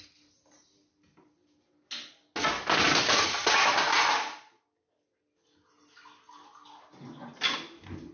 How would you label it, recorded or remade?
recorded